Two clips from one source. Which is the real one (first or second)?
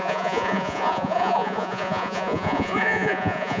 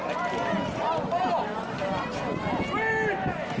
second